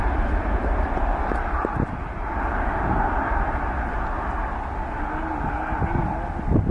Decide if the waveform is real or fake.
real